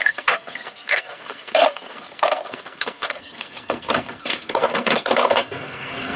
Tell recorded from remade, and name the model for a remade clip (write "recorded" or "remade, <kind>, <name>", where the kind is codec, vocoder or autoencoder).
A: remade, codec, SNAC